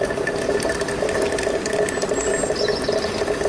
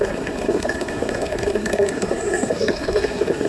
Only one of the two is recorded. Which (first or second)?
first